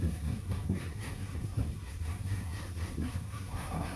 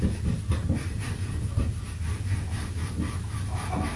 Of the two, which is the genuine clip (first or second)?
second